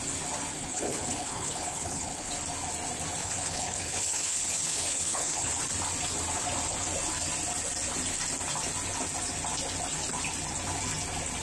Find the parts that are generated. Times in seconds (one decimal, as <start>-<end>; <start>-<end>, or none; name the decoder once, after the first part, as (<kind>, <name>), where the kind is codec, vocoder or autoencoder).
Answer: 0.6-2.3 (codec, HILCodec); 3.2-5.5